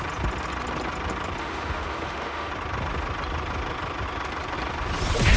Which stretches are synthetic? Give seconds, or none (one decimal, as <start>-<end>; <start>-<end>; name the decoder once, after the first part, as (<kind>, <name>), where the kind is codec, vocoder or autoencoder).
1.4-2.5 (autoencoder, DAC-VAE)